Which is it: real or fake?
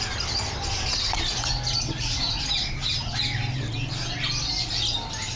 real